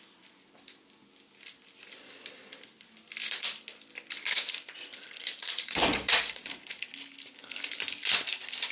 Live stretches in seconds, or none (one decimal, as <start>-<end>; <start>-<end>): 0.0-5.2; 6.8-8.7